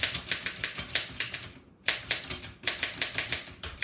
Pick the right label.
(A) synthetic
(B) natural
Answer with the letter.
B